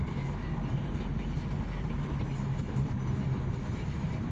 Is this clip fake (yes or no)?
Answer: no